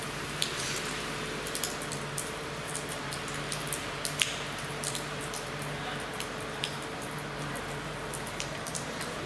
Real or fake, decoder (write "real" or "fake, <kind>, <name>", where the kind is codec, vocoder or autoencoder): fake, vocoder, BigVGAN v2